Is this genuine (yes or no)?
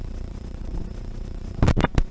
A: no